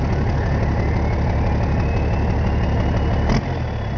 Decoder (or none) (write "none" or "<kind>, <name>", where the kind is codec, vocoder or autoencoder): none